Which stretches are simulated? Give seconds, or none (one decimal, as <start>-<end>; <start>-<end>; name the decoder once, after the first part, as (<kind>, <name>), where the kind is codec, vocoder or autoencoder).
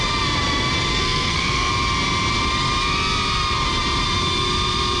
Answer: 0.9-1.7 (codec, SNAC)